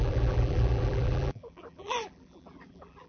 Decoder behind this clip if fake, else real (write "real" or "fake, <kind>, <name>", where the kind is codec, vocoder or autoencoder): fake, vocoder, BigVGAN v2